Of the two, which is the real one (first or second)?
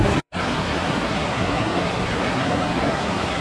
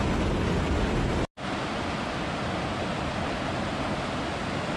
second